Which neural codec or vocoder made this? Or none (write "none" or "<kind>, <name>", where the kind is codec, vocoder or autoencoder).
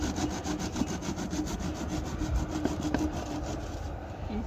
none